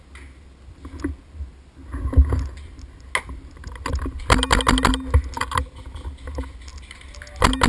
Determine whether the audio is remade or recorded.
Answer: recorded